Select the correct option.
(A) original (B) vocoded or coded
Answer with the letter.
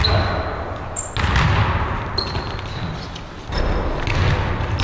A